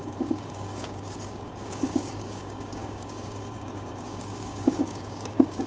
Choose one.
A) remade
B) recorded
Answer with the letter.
A